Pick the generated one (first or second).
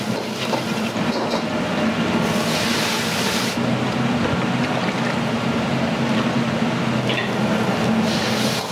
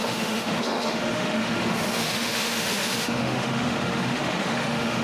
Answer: second